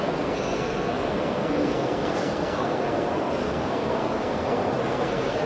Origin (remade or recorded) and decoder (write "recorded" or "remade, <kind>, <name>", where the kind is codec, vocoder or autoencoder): remade, codec, SNAC